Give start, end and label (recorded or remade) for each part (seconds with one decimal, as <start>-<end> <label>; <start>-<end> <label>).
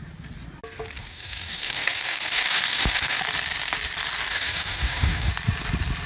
0.0-1.0 recorded; 1.0-3.2 remade; 3.2-4.3 recorded; 4.3-5.3 remade; 5.3-6.1 recorded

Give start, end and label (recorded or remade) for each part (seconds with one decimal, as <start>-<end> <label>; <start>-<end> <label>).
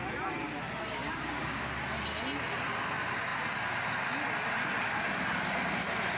0.0-1.0 recorded; 1.0-1.7 remade; 1.7-6.2 recorded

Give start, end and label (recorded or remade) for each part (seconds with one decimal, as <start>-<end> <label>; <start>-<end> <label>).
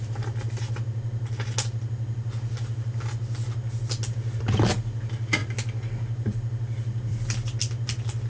0.0-8.3 recorded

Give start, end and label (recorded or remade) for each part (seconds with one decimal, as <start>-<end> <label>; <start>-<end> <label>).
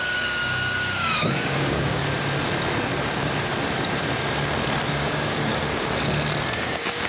0.0-2.0 remade; 2.0-4.9 recorded; 4.9-5.5 remade; 5.5-6.6 recorded; 6.6-7.1 remade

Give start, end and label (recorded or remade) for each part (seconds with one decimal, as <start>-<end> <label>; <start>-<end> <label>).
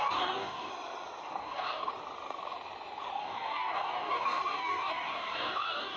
0.0-0.7 remade; 0.7-1.4 recorded; 1.4-1.9 remade; 1.9-3.2 recorded; 3.2-6.0 remade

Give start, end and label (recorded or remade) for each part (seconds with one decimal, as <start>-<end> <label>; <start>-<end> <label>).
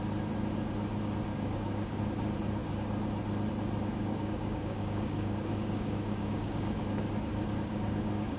0.0-1.3 recorded; 1.3-2.0 remade; 2.0-3.9 recorded; 3.9-6.8 remade; 6.8-7.3 recorded; 7.3-8.4 remade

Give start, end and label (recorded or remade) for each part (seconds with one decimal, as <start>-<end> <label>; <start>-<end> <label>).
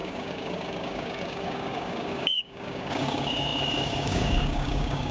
0.0-5.1 remade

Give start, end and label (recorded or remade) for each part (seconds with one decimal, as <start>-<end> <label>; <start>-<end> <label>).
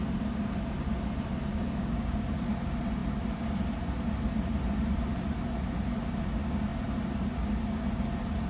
0.0-1.5 recorded; 1.5-2.4 remade; 2.4-8.5 recorded